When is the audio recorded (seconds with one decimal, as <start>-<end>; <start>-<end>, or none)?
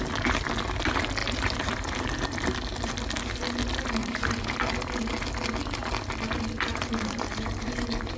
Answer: 0.0-1.2; 2.0-4.0; 4.5-6.7